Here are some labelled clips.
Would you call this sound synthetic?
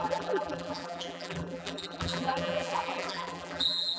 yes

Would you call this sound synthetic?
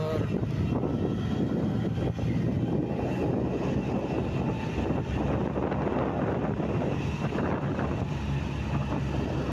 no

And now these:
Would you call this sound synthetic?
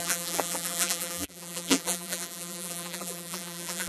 yes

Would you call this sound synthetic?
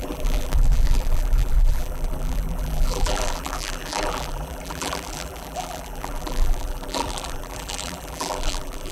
yes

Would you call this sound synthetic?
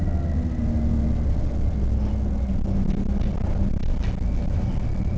no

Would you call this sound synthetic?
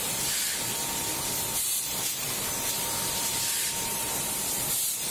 yes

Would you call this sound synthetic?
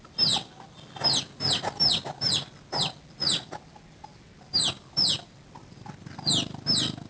no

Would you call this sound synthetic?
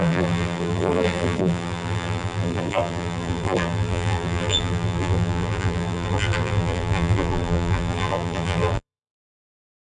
yes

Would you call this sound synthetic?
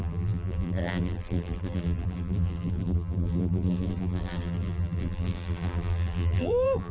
yes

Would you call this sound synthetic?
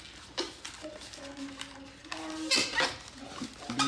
no